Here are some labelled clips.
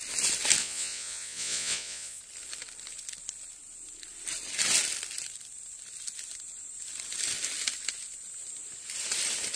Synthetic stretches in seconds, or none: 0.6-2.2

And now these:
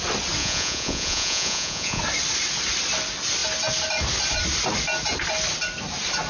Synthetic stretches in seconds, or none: 0.4-2.0

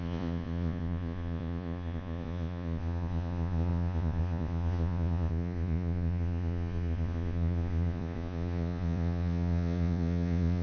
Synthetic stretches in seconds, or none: 0.0-10.6

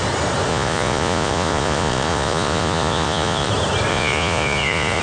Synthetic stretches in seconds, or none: 0.5-3.5; 3.9-5.0